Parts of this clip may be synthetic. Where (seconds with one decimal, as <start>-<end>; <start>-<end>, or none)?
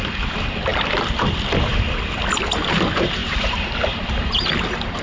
3.2-4.0